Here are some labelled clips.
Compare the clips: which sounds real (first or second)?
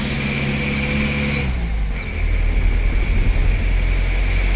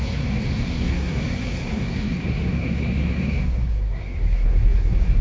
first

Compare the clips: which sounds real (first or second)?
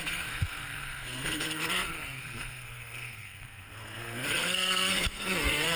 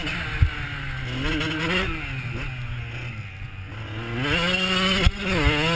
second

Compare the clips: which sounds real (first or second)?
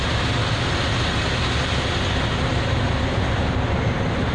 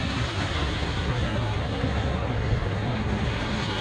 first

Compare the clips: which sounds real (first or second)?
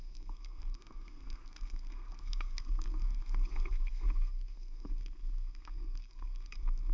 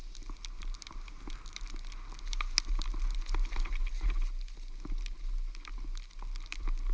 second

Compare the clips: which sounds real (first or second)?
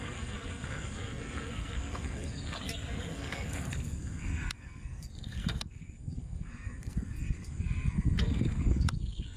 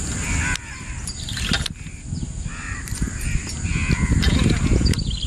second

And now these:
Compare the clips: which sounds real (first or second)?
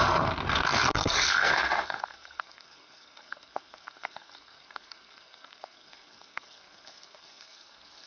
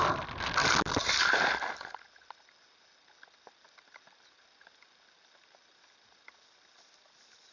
second